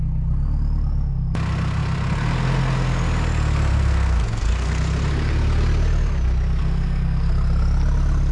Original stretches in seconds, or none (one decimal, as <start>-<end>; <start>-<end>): 0.0-3.7; 4.8-6.6; 7.3-8.3